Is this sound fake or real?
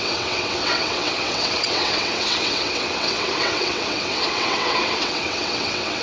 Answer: fake